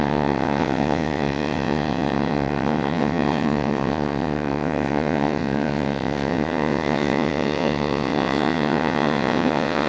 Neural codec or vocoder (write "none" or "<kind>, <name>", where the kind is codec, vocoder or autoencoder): vocoder, WaveNeXt